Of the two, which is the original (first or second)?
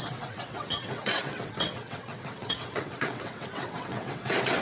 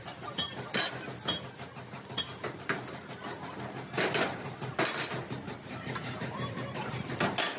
second